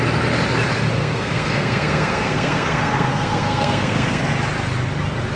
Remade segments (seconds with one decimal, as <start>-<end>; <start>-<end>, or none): 1.0-4.2